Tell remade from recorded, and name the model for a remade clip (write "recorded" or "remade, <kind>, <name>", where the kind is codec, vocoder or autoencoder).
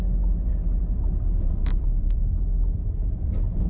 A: remade, vocoder, BigVGAN v2